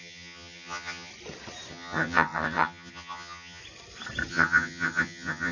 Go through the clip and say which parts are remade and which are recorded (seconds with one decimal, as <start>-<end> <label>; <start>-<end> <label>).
0.0-1.1 remade; 1.1-1.7 recorded; 1.7-3.6 remade; 3.6-4.3 recorded; 4.3-5.5 remade